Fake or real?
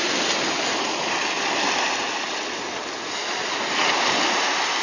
real